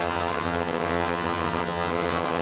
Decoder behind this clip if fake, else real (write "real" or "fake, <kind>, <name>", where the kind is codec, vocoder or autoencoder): fake, vocoder, HiFi-GAN